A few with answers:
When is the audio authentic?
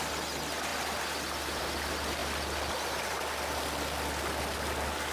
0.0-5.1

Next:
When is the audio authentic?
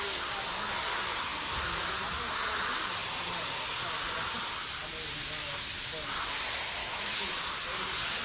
0.0-6.8; 7.4-8.2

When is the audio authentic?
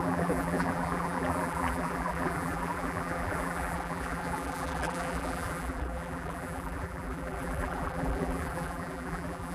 none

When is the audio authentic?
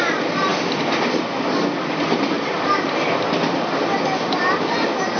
0.0-5.2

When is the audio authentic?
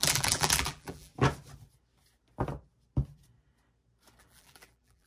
1.1-4.2